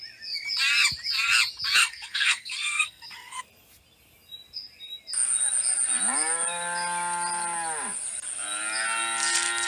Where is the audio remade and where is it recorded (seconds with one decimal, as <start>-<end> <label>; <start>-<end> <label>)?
0.0-1.8 recorded; 1.8-3.4 remade; 3.4-9.7 recorded